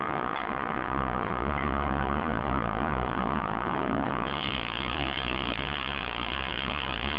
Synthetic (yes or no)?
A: yes